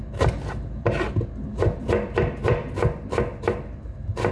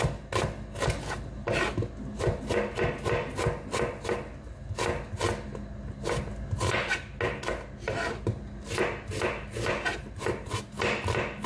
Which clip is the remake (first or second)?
first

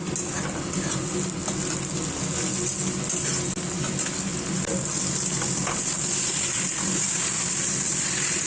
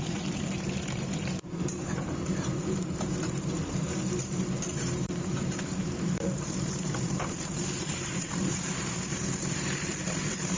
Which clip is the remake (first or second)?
second